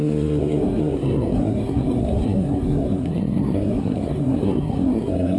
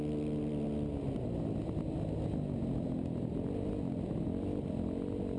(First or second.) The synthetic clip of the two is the first